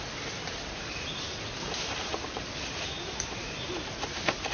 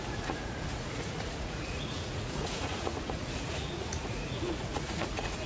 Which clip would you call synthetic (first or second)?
second